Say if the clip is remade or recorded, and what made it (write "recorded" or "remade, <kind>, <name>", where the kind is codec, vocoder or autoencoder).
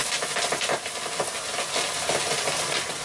recorded